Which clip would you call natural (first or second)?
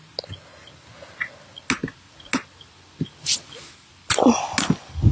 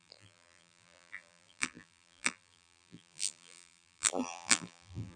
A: first